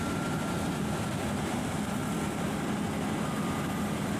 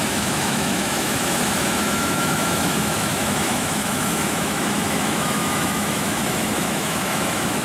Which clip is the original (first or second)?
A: first